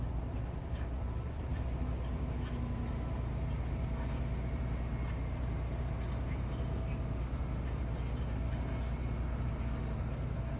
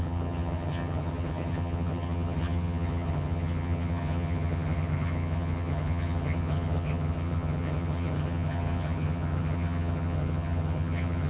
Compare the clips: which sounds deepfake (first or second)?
second